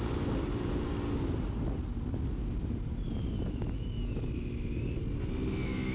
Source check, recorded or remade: recorded